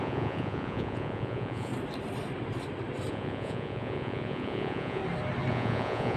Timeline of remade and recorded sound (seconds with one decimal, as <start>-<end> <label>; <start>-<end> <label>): 0.0-1.7 remade; 1.7-3.1 recorded; 3.1-5.0 remade; 5.0-5.5 recorded; 5.5-6.2 remade